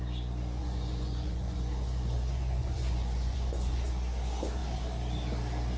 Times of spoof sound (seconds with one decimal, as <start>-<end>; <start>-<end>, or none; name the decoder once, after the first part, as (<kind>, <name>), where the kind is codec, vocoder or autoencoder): 0.6-3.9 (vocoder, Vocos)